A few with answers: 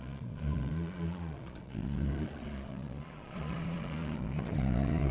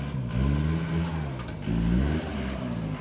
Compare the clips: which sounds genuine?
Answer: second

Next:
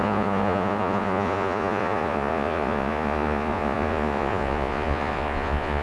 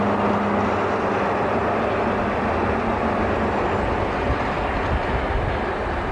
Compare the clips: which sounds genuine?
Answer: second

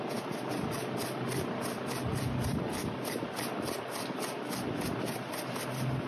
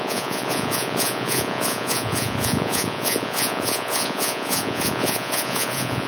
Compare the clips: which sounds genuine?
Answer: first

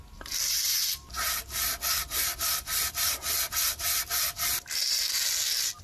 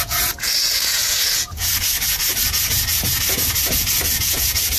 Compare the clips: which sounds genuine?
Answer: first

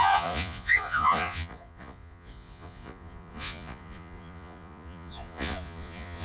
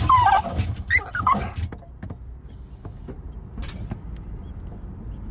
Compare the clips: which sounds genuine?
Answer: second